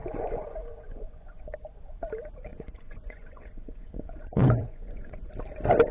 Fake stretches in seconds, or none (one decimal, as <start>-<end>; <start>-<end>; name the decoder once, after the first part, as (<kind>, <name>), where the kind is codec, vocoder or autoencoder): 0.0-1.4 (vocoder, Vocos); 2.5-5.3